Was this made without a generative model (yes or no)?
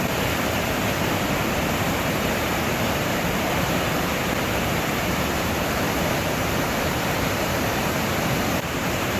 no